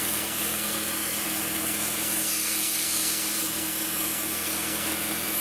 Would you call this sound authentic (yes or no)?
no